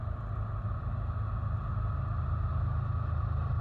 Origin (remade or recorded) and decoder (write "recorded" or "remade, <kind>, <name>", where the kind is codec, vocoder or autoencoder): recorded